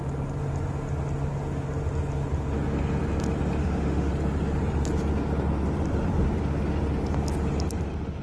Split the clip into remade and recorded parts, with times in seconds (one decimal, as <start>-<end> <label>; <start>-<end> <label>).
0.0-3.6 recorded; 3.6-4.1 remade; 4.1-8.2 recorded